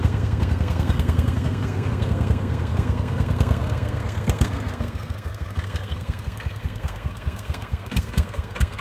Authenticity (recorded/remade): remade